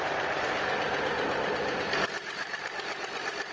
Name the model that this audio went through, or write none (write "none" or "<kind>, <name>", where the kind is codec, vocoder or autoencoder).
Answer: vocoder, BigVGAN v2